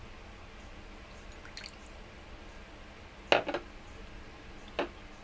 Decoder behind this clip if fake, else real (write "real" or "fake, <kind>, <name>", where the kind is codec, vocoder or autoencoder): real